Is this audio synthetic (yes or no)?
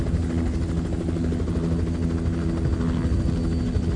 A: no